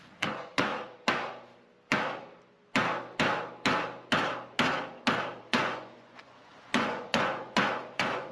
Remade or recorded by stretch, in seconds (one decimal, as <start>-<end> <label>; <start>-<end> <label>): 0.0-0.7 remade; 0.7-5.4 recorded; 5.4-8.3 remade